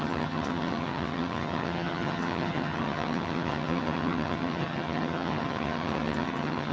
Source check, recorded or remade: remade